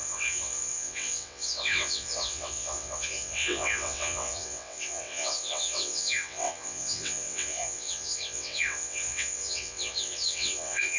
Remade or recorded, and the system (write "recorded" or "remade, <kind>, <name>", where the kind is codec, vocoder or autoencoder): remade, vocoder, WaveNeXt